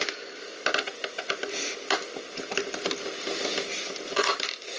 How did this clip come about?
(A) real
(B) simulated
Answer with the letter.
A